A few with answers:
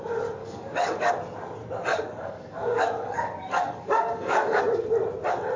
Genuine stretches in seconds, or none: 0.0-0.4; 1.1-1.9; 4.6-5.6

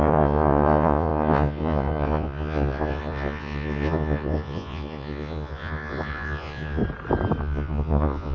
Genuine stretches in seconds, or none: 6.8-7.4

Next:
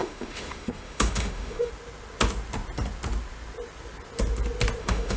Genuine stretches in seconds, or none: 1.7-4.8